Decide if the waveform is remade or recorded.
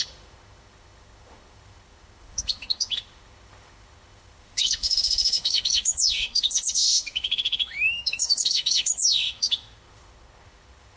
remade